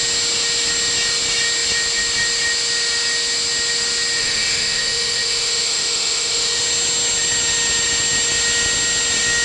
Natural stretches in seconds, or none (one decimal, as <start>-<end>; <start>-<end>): 0.0-4.2; 6.6-9.4